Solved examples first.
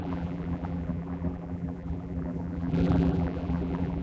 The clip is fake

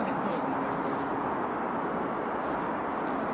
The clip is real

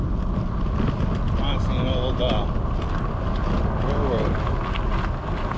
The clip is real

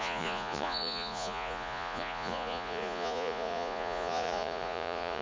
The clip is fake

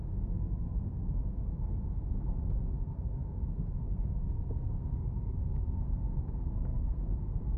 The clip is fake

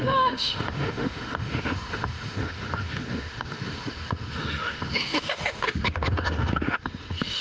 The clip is fake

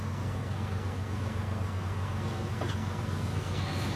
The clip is fake